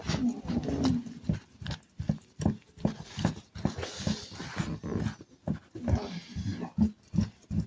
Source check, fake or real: real